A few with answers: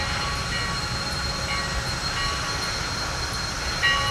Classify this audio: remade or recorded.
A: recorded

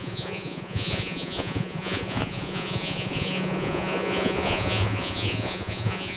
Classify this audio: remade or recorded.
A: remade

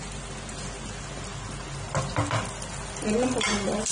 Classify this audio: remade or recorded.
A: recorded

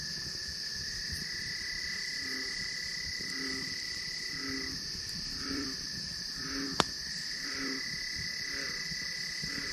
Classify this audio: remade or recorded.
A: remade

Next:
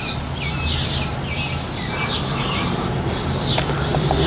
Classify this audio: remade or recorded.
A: recorded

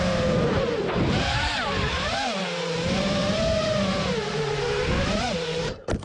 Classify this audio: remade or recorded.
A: remade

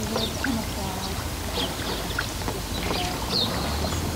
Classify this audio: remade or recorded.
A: recorded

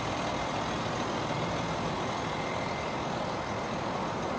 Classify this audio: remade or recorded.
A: recorded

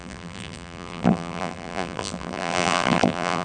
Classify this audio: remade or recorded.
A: remade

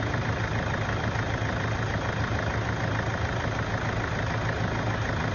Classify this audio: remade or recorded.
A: recorded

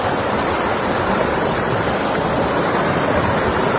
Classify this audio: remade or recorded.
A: recorded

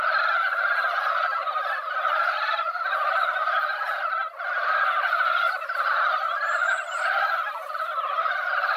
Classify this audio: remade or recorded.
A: remade